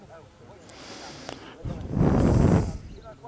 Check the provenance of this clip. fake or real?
real